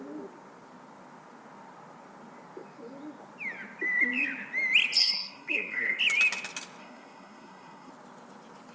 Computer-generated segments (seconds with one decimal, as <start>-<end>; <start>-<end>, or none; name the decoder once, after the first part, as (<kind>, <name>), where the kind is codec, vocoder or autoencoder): 5.0-6.0 (codec, SNAC); 6.8-7.9